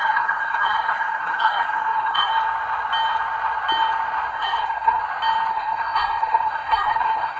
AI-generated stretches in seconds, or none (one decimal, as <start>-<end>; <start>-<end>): 0.0-2.3; 4.3-5.0; 5.5-7.4